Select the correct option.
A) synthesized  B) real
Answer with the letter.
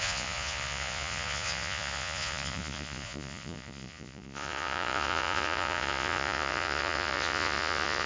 A